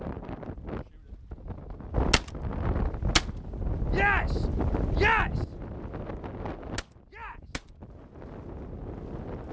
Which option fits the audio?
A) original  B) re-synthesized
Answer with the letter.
A